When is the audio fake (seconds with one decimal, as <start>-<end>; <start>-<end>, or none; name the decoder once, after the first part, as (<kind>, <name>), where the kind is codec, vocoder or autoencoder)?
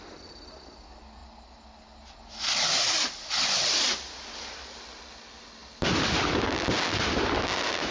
none